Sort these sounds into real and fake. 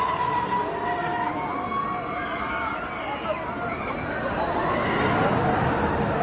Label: real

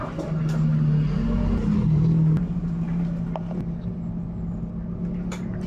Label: real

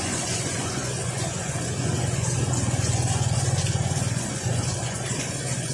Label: fake